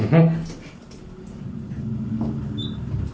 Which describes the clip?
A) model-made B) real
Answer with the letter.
B